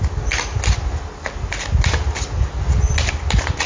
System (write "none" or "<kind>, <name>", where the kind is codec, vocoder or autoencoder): none